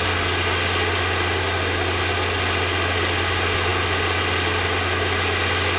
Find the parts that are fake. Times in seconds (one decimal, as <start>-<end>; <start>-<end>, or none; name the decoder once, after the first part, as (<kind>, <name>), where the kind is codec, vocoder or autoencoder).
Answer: none